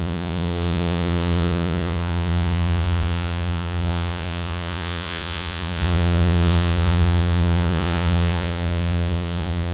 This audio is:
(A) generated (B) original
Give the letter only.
A